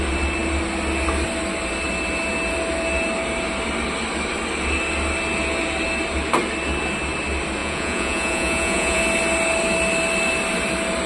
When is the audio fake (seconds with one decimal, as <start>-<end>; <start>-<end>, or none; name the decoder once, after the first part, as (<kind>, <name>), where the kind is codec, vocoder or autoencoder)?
7.6-9.0 (vocoder, Vocos)